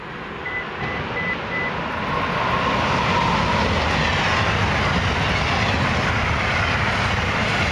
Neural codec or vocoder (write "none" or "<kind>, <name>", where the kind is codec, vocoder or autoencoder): none